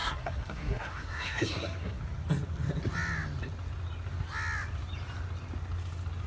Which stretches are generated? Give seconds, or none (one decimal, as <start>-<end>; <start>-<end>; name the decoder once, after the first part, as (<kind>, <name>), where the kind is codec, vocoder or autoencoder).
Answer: 0.0-2.0 (codec, SNAC)